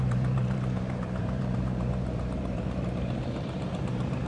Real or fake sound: fake